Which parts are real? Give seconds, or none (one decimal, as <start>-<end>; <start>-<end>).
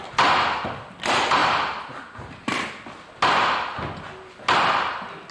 0.0-5.3